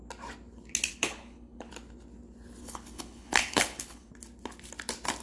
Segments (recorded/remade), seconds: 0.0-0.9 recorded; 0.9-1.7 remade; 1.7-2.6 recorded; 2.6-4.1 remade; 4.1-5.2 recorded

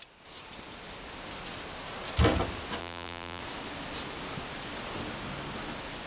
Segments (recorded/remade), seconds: 0.0-2.8 recorded; 2.8-3.4 remade; 3.4-6.1 recorded

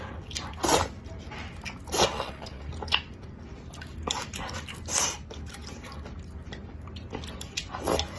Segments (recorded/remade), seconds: 0.0-2.1 recorded; 2.1-2.7 remade; 2.7-8.2 recorded